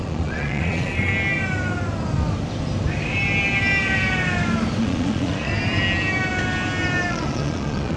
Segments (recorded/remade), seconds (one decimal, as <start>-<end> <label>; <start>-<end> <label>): 0.0-1.1 remade; 1.1-4.8 recorded; 4.8-5.5 remade; 5.5-7.1 recorded; 7.1-8.0 remade